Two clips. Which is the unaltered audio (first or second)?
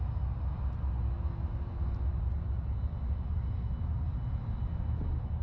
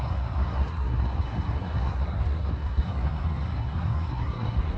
first